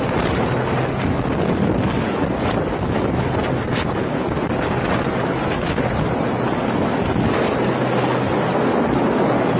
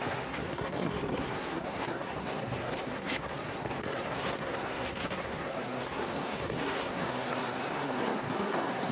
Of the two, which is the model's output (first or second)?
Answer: second